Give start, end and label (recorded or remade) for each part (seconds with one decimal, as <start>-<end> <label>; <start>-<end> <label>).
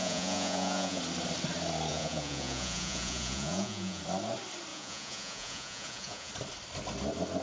0.0-1.0 remade; 1.0-1.9 recorded; 1.9-4.0 remade; 4.0-4.7 recorded; 4.7-6.3 remade; 6.3-7.4 recorded